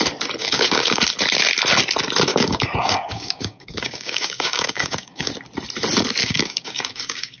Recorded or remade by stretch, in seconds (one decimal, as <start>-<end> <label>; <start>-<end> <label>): 0.0-0.4 recorded; 0.4-1.0 remade; 1.0-2.3 recorded; 2.3-5.3 remade; 5.3-6.2 recorded; 6.2-7.4 remade